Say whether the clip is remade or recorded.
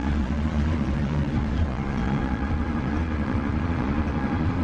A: remade